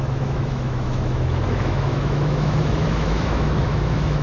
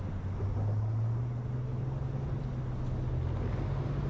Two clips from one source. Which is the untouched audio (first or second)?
second